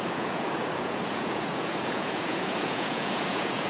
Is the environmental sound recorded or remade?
remade